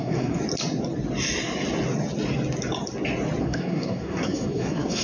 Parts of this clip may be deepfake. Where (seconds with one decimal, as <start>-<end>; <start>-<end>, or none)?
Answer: 0.0-0.4; 3.4-5.0